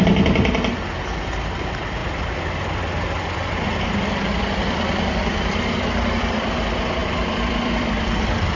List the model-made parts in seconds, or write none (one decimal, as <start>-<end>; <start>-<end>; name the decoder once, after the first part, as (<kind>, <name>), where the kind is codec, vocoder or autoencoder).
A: 2.0-6.5 (vocoder, BigVGAN v2); 7.0-8.6